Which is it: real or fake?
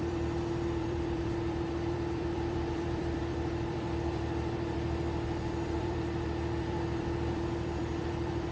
fake